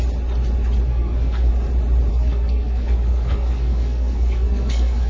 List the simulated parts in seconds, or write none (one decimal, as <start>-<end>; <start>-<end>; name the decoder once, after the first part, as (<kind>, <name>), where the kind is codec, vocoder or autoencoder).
0.9-1.5 (codec, SNAC); 2.1-5.1